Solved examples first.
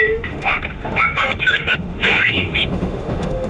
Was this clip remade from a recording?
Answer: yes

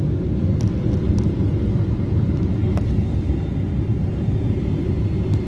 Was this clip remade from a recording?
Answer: no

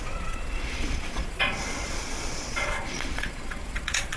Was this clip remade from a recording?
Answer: yes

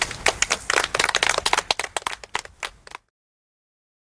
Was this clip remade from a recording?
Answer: no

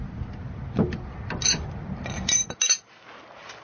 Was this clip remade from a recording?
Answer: no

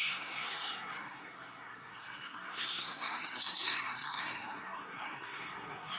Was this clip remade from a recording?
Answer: yes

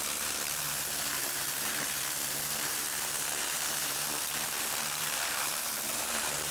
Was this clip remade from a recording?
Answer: yes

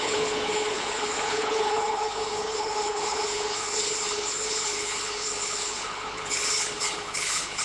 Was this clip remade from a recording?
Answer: yes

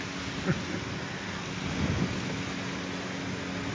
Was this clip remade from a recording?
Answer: no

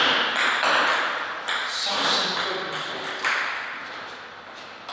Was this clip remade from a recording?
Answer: no